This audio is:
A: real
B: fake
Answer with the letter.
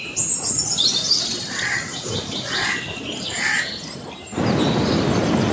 A